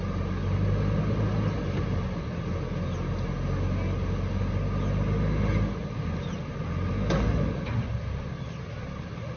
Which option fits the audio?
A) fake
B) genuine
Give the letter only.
B